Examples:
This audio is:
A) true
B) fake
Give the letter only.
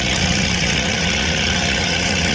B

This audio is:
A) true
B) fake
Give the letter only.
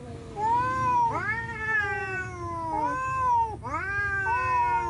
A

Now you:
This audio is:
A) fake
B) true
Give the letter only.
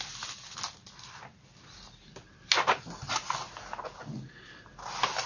B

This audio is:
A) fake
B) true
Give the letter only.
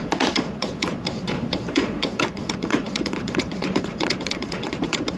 A